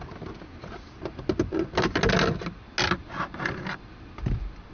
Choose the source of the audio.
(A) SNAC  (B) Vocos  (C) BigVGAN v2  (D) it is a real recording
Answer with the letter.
D